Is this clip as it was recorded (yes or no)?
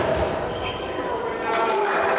yes